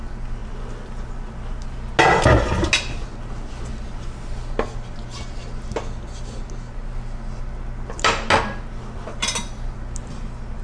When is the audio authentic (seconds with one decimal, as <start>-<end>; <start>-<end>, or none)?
0.0-10.6